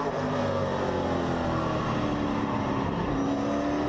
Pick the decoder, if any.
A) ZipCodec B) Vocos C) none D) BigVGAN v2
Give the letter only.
C